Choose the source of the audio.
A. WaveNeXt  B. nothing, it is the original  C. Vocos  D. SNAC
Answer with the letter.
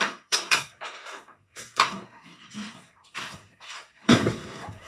D